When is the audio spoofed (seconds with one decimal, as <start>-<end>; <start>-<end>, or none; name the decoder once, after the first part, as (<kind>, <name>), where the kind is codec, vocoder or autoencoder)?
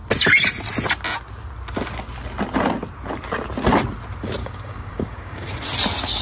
4.4-5.5 (codec, DAC)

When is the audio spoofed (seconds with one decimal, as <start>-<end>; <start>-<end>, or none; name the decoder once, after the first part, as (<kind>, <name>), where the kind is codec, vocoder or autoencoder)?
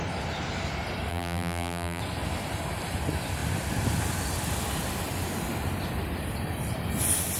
1.1-2.0 (vocoder, BigVGAN v2)